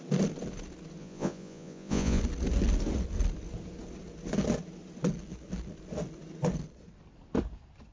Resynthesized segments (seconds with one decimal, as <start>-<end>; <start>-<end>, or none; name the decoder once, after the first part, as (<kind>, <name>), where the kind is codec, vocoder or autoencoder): 1.0-2.2 (vocoder, Vocos)